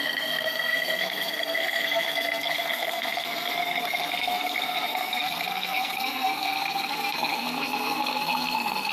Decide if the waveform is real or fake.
fake